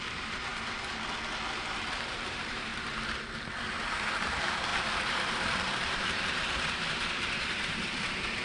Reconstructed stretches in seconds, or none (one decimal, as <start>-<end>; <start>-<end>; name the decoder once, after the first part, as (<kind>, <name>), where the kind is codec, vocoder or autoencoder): 0.0-0.5 (vocoder, BigVGAN v2); 1.9-2.7; 3.6-8.4